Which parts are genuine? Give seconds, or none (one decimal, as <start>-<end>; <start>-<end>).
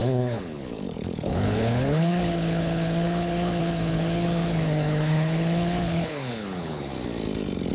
6.9-7.7